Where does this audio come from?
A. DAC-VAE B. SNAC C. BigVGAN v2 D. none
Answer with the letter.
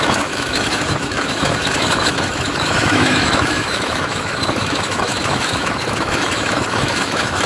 A